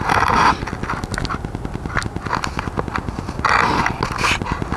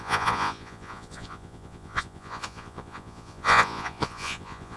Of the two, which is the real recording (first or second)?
first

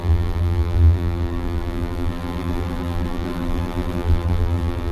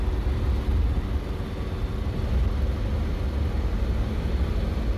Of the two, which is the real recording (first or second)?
second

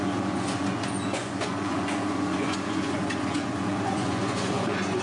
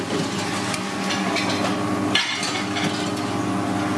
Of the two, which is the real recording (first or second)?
second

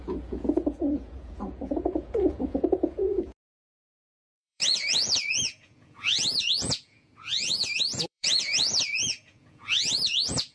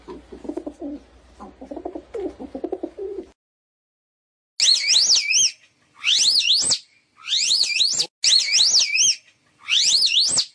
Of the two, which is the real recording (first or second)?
second